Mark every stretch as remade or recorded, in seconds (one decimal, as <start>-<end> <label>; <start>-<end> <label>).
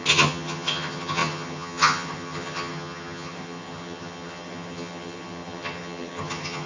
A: 0.0-6.7 remade